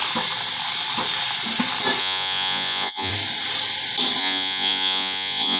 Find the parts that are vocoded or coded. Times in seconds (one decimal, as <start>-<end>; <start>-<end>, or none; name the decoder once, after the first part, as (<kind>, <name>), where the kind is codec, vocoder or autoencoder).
2.0-3.1 (vocoder, Vocos); 4.2-5.6